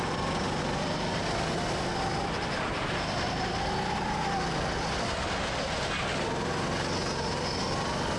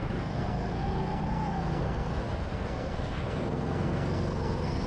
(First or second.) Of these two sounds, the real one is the first